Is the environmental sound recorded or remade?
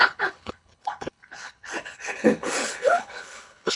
remade